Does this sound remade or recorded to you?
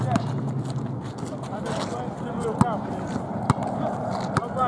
recorded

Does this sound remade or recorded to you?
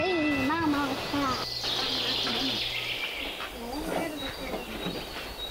recorded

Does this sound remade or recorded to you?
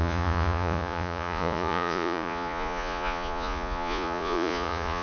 remade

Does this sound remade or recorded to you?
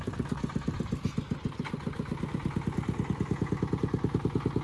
recorded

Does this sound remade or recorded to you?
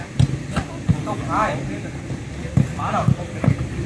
recorded